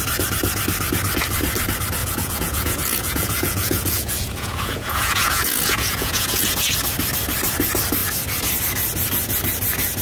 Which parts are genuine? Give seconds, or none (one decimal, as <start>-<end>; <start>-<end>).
0.0-2.0; 6.7-10.0